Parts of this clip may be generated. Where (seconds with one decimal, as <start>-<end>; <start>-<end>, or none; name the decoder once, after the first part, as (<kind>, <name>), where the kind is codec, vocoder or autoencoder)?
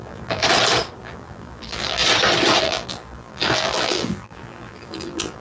0.0-0.4 (vocoder, BigVGAN v2); 1.0-2.0; 2.6-5.4